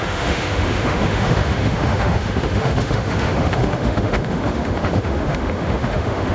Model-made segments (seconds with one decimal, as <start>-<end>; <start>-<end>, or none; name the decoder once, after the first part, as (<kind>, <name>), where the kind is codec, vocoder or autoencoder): 0.0-6.3 (autoencoder, DAC-VAE)